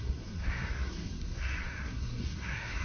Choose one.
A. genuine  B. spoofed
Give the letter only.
B